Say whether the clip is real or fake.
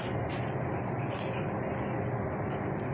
real